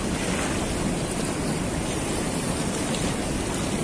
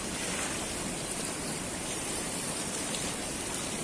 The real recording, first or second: first